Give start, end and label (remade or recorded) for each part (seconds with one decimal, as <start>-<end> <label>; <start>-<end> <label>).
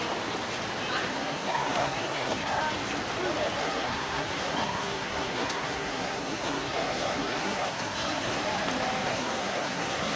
0.0-1.1 recorded; 1.1-2.6 remade; 2.6-3.6 recorded; 3.6-8.4 remade; 8.4-9.1 recorded; 9.1-10.2 remade